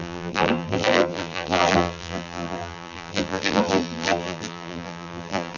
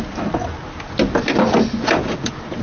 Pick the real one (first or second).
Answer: second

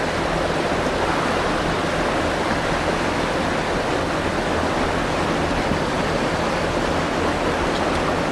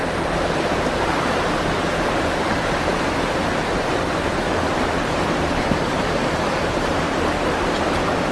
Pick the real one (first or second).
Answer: first